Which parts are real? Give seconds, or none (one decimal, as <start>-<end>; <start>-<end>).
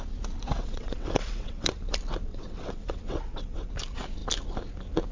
0.0-0.5; 1.8-2.3; 3.7-5.1